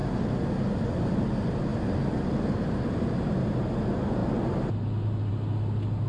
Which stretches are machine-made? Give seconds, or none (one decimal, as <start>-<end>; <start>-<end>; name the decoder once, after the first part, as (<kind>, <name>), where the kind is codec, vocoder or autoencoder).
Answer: none